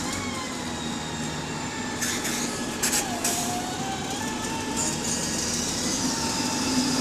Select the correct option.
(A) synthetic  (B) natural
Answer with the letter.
B